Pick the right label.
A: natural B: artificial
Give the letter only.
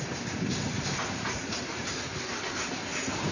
B